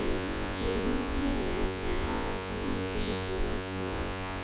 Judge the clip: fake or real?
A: fake